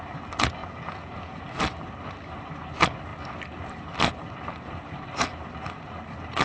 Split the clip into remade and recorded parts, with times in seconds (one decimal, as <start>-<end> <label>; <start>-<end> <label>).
0.0-0.6 recorded; 0.6-1.4 remade; 1.4-6.4 recorded